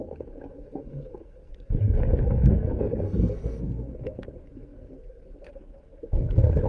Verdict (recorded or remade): remade